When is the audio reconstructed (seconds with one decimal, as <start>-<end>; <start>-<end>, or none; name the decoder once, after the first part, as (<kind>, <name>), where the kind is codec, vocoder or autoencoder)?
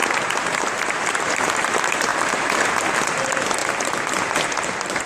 0.0-2.1 (vocoder, BigVGAN v2); 3.1-3.6; 4.2-5.1